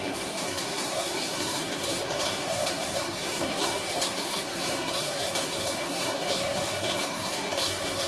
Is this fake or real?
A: fake